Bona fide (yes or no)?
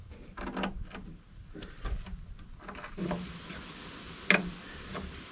yes